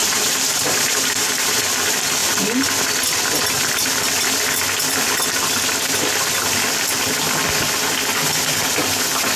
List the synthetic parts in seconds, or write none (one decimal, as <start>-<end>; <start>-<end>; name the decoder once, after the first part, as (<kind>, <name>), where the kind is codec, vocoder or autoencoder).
0.0-1.6 (vocoder, BigVGAN v2)

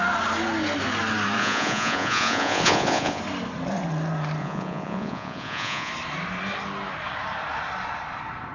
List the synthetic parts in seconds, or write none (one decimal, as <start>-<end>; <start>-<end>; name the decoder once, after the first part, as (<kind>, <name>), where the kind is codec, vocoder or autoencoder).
1.4-3.2 (vocoder, Vocos); 4.4-5.9

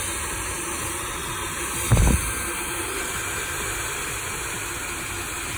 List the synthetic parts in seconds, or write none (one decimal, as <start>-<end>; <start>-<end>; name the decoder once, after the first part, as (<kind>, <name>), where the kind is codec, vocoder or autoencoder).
none

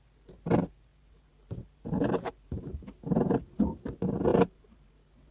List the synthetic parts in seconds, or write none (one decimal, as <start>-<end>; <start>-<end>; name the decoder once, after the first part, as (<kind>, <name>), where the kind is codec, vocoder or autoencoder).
0.9-3.8 (vocoder, BigVGAN v2); 4.3-5.3